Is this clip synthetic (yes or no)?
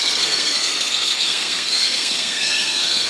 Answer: yes